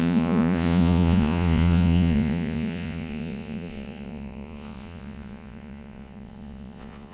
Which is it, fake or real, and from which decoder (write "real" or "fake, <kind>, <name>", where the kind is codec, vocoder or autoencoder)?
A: fake, vocoder, Vocos